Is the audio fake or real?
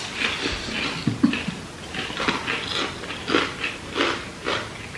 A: real